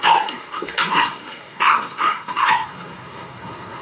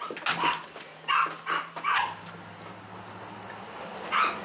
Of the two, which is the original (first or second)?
second